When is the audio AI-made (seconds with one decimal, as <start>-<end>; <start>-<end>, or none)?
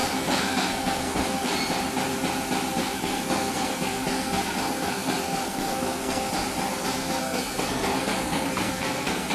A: 0.0-1.5; 2.8-6.3; 6.7-9.3